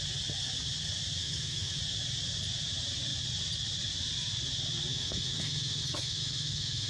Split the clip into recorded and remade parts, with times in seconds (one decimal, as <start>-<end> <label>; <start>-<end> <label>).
0.0-1.2 recorded; 1.2-1.8 remade; 1.8-4.9 recorded; 4.9-6.9 remade